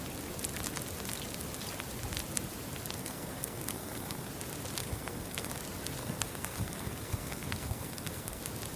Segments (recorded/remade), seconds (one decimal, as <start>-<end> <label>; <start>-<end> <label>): 0.0-3.0 recorded; 3.0-4.3 remade; 4.3-4.8 recorded; 4.8-5.5 remade; 5.5-6.0 recorded; 6.0-8.4 remade; 8.4-8.8 recorded